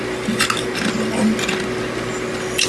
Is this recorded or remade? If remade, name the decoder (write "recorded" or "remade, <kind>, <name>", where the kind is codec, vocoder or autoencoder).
recorded